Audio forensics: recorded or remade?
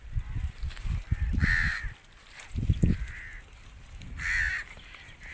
remade